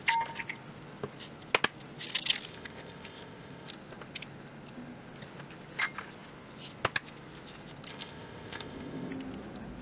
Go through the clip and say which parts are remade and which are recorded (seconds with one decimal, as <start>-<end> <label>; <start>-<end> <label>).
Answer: 0.0-2.5 recorded; 2.5-3.7 remade; 3.7-7.9 recorded; 7.9-9.1 remade; 9.1-9.8 recorded